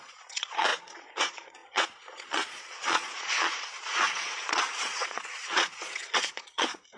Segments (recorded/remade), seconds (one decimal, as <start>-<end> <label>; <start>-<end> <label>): 0.0-7.0 remade